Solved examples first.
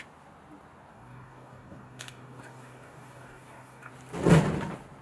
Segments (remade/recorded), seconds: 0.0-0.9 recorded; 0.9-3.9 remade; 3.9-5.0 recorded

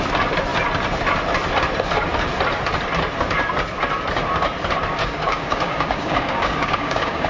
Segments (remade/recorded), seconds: 0.0-5.0 recorded; 5.0-7.3 remade